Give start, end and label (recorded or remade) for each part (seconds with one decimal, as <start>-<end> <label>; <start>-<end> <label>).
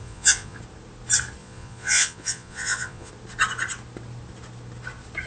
0.0-0.6 remade; 0.6-1.4 recorded; 1.4-3.1 remade; 3.1-5.3 recorded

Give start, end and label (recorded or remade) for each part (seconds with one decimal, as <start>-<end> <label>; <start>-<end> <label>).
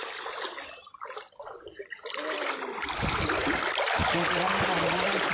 0.0-5.3 recorded